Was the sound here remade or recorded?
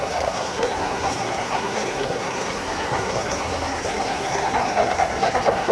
remade